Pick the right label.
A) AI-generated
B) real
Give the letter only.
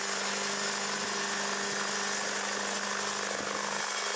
B